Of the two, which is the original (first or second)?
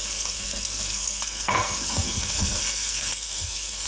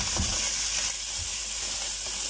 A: second